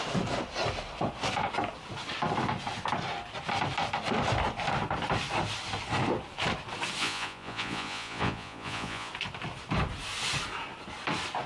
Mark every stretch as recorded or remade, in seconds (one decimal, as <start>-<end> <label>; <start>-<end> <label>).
0.0-7.0 recorded; 7.0-9.1 remade; 9.1-11.5 recorded